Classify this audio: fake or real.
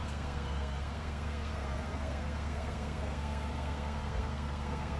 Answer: fake